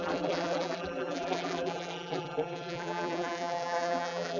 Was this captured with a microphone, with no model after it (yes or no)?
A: no